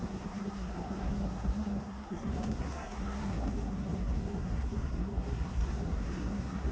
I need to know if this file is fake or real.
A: fake